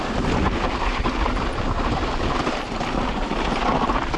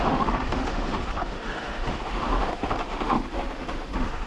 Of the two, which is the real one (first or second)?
first